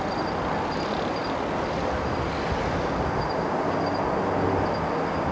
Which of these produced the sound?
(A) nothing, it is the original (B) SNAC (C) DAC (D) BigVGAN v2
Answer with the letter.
A